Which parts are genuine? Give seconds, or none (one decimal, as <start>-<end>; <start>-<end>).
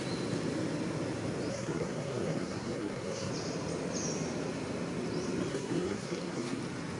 0.0-1.5; 3.3-5.5; 6.6-7.0